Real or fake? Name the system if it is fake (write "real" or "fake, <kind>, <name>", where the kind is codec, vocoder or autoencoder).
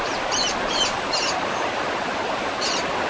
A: real